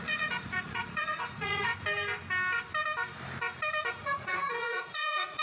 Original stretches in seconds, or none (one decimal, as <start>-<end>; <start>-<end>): 1.7-3.9